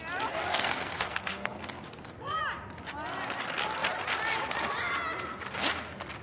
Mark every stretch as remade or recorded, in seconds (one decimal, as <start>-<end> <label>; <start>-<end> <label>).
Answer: 0.0-0.5 recorded; 0.5-2.4 remade; 2.4-6.2 recorded